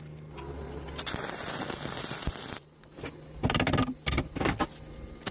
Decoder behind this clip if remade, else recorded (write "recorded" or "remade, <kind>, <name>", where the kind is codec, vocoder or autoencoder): recorded